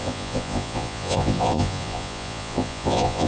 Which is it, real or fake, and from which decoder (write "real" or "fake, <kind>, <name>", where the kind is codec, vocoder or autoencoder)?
fake, vocoder, Vocos